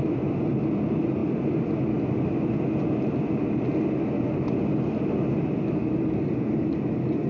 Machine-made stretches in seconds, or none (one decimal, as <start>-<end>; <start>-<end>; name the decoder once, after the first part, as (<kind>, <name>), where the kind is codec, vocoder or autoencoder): none